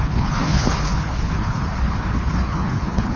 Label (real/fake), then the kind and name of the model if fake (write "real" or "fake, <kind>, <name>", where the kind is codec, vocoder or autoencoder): fake, codec, HILCodec